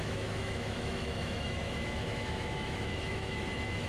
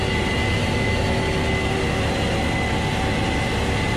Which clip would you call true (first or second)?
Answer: second